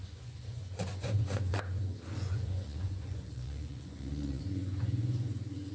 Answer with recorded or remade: remade